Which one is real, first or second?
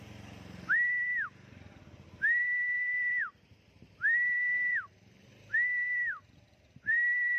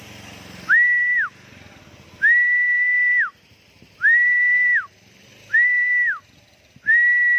second